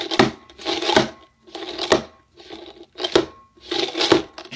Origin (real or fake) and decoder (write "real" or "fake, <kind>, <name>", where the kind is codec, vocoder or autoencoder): real